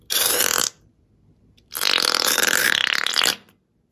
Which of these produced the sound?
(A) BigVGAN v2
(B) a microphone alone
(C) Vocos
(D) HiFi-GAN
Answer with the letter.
B